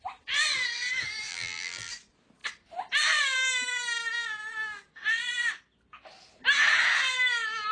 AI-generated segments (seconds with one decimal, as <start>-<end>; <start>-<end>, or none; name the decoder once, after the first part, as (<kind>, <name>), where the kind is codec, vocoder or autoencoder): 1.3-1.9 (vocoder, BigVGAN v2)